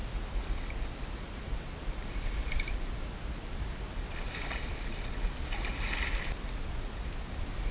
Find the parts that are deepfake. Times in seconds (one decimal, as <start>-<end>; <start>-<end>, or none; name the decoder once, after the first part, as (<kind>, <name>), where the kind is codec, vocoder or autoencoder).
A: none